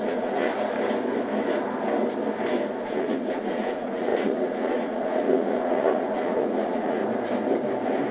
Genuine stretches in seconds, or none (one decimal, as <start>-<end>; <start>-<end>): 0.5-2.8; 7.0-8.1